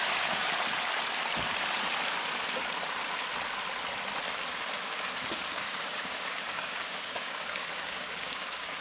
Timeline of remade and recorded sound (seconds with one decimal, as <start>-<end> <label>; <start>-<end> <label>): 0.0-0.5 remade; 0.5-4.8 recorded; 4.8-8.8 remade